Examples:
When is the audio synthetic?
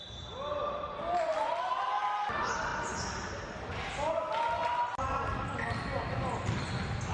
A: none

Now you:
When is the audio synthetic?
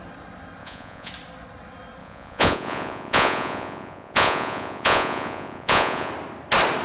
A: 0.6-1.1; 2.0-6.1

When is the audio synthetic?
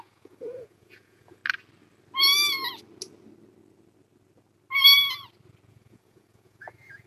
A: 0.0-1.4; 5.7-7.1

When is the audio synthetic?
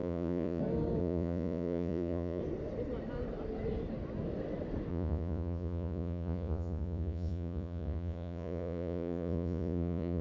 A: 0.0-0.6; 1.0-2.4; 4.9-10.2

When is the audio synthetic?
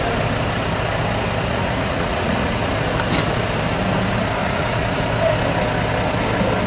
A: 1.5-2.7; 4.4-5.0